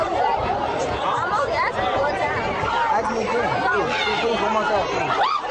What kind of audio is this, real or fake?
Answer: real